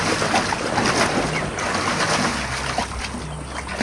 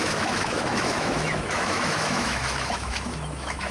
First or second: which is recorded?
first